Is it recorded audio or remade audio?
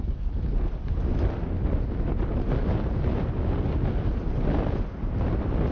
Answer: recorded